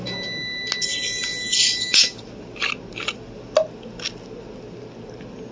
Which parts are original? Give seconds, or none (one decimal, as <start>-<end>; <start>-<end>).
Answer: 0.0-5.5